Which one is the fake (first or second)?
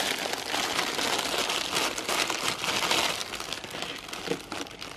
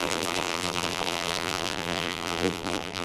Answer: second